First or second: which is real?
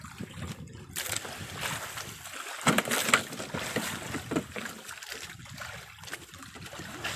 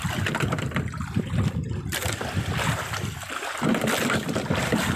first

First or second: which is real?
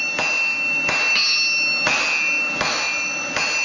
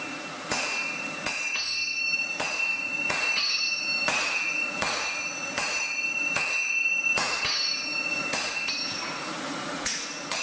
first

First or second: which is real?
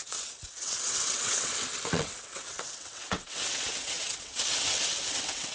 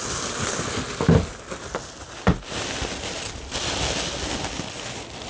second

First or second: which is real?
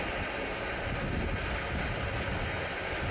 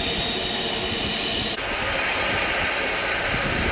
first